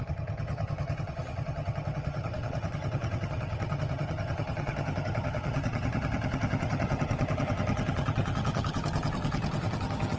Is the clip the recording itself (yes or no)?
no